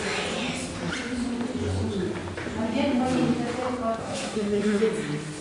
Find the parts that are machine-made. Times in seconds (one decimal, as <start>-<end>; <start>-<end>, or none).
4.0-4.8